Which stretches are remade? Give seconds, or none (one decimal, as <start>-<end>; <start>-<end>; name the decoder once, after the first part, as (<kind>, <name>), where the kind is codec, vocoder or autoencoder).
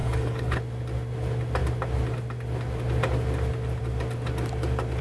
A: 0.0-0.6 (codec, HILCodec)